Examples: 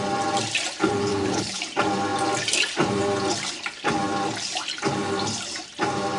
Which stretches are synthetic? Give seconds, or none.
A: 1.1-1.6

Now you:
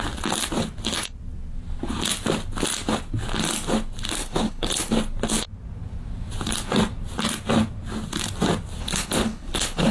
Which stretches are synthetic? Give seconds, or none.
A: 4.2-4.9; 8.8-9.9

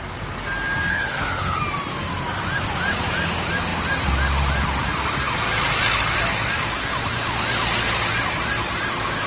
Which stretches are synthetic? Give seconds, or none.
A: 0.9-1.6

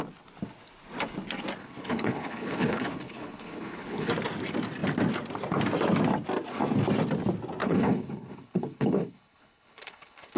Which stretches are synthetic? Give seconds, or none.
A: 1.6-4.1; 7.6-10.4

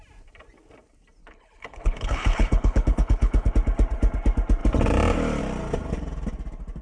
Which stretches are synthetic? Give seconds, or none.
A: 1.2-3.5

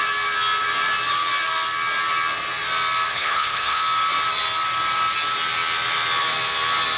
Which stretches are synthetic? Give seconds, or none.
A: 3.1-3.8

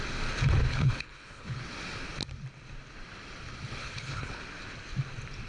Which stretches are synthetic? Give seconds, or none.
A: 0.7-1.6; 3.8-4.4

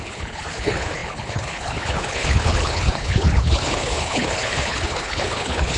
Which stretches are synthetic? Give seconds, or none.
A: 0.0-5.8